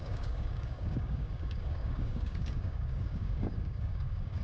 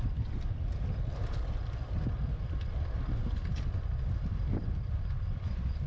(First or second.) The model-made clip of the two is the first